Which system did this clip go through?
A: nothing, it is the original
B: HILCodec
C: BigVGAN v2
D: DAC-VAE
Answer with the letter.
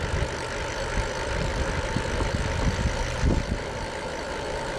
C